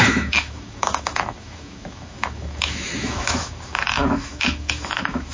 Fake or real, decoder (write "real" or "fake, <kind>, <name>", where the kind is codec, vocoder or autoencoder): fake, autoencoder, DAC-VAE